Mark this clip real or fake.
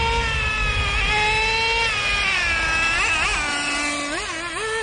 real